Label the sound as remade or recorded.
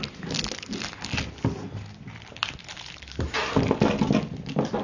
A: recorded